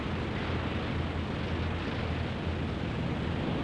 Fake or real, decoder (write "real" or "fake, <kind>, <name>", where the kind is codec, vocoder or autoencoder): real